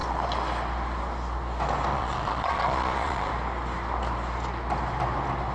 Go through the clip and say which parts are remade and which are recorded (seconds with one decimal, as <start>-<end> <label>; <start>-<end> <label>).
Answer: 0.0-1.9 recorded; 1.9-3.3 remade; 3.3-5.5 recorded